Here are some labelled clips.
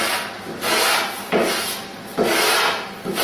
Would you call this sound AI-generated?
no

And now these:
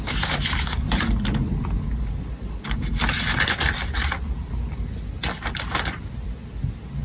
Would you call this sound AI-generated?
no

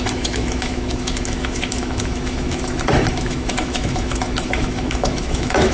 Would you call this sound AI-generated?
yes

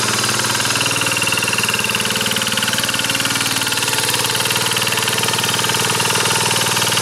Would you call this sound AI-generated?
no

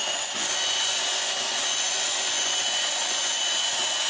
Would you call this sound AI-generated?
yes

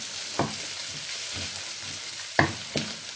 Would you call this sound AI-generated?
no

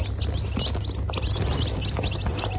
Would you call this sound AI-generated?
no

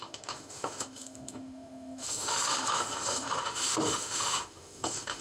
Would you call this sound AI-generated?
yes